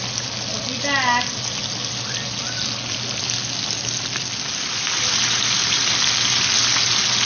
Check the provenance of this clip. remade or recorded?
recorded